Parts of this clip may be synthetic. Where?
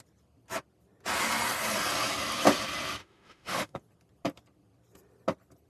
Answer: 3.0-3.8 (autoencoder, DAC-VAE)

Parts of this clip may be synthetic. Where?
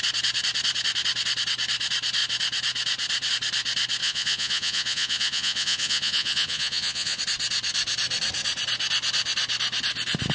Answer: 4.0-7.2 (vocoder, Vocos)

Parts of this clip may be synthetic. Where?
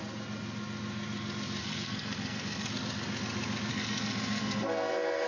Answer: 1.6-2.7 (codec, SNAC); 3.7-5.3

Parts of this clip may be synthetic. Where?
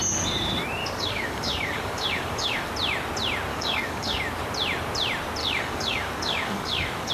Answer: 0.8-2.7 (codec, DAC); 3.5-4.2; 5.4-7.1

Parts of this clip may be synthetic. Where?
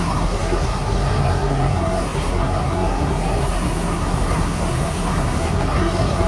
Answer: 0.0-6.3 (codec, SNAC)